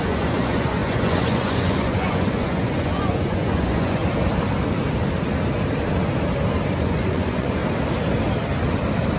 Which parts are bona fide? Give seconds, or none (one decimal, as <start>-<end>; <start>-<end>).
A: 4.0-6.8; 7.6-9.2

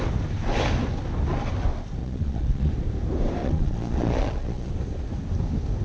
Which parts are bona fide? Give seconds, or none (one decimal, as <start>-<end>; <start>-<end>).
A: 0.0-2.0; 2.7-3.4; 4.7-5.8

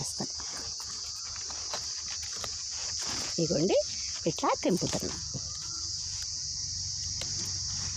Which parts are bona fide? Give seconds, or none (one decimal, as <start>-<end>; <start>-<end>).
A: 1.4-2.3; 6.4-8.0